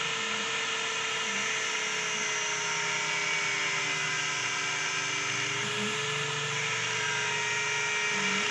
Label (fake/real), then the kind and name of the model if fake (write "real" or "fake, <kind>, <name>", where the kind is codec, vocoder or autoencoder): real